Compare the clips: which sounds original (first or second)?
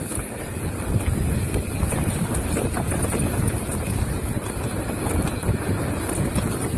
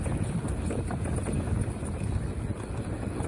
second